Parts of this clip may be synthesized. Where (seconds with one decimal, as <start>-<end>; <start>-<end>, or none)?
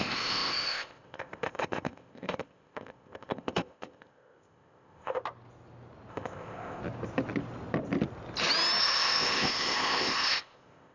0.0-5.2; 6.1-6.8; 8.8-10.9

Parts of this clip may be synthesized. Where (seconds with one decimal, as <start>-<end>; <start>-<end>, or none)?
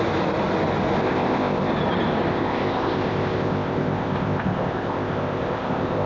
1.0-1.7; 2.3-6.1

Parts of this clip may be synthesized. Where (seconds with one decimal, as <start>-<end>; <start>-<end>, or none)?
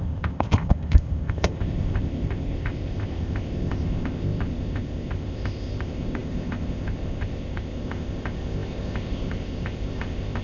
0.0-10.4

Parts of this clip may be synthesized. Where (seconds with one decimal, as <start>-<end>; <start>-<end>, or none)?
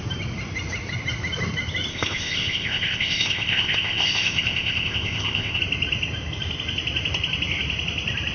1.9-5.6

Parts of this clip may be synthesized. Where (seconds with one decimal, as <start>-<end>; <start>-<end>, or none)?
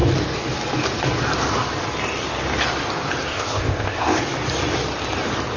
3.3-4.2